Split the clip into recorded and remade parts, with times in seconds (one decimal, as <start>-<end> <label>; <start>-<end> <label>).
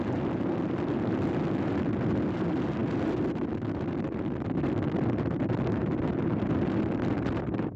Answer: 0.0-7.8 recorded